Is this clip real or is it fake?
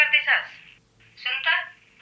real